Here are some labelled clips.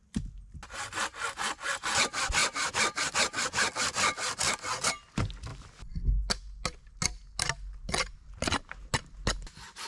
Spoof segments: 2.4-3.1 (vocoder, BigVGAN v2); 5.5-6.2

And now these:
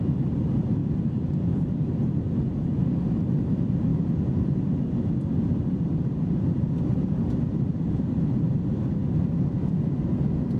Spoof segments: 3.9-8.3 (vocoder, BigVGAN v2)

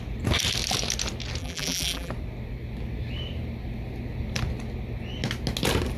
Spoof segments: 1.4-2.1 (vocoder, BigVGAN v2)

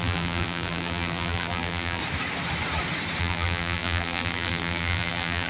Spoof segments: 0.0-2.0 (vocoder, BigVGAN v2); 3.2-5.5

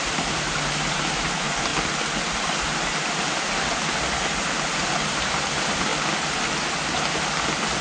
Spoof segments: 0.0-1.7 (vocoder, BigVGAN v2); 4.9-5.9

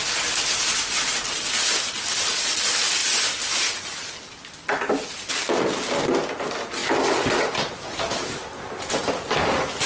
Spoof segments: none

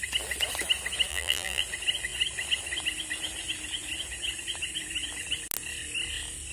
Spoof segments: 1.1-1.6 (vocoder, BigVGAN v2)

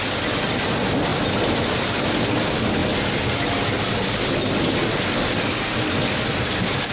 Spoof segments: none